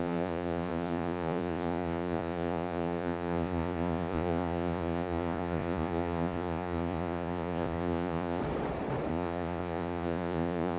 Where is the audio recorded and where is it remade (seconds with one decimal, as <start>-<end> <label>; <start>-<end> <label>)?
0.0-8.4 remade; 8.4-9.1 recorded; 9.1-10.8 remade